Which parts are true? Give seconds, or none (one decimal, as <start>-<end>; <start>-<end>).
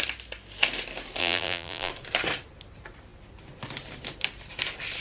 0.0-1.2; 1.9-5.0